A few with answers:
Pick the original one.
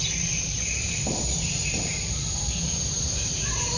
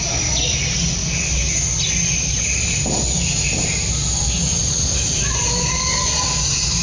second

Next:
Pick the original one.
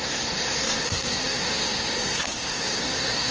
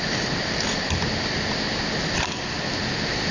second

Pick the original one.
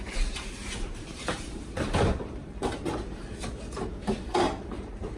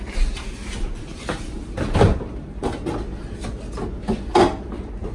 second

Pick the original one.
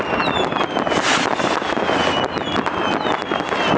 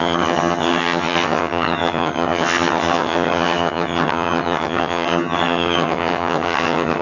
first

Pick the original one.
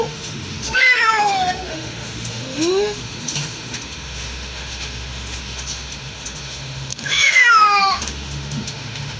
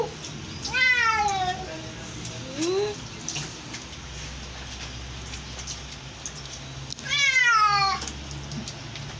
second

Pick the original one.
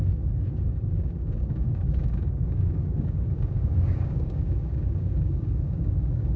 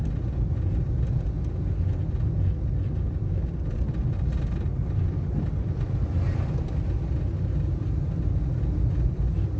second